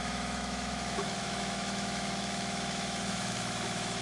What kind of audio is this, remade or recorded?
remade